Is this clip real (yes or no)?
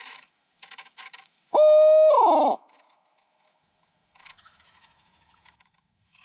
no